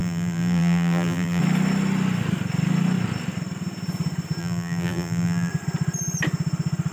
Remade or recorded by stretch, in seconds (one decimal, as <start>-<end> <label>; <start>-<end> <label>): 0.0-1.4 remade; 1.4-4.4 recorded; 4.4-5.5 remade; 5.5-6.9 recorded